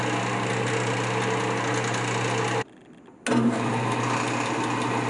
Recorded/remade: recorded